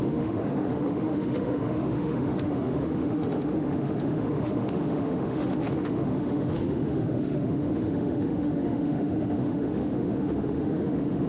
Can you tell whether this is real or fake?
fake